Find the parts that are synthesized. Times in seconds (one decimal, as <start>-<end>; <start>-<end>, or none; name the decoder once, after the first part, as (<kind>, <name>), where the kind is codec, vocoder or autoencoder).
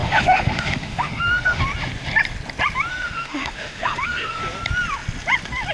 0.0-1.6 (autoencoder, DAC-VAE); 2.9-4.4